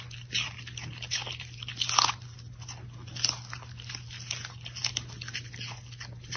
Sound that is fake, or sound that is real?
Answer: real